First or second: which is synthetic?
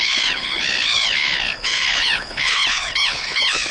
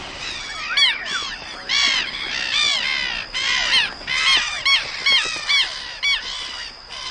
first